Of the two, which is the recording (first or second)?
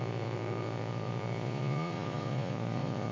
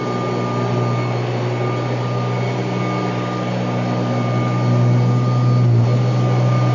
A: second